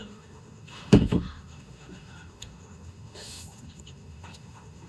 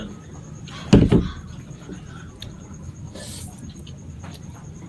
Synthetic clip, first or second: first